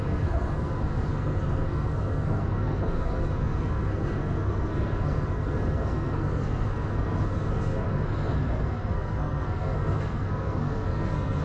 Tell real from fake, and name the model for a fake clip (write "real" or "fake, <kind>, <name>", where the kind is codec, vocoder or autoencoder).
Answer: fake, codec, SNAC